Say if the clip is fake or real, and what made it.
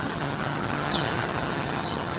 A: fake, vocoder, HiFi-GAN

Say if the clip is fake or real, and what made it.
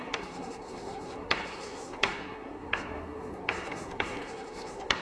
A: fake, codec, SNAC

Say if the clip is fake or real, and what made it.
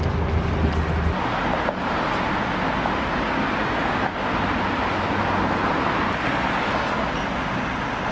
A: real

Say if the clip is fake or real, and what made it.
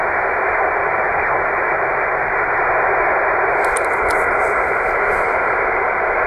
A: real